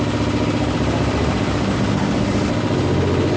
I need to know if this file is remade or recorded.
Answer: recorded